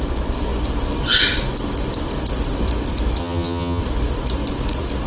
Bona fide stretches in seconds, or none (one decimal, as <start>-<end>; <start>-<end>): 0.0-3.2; 3.8-5.1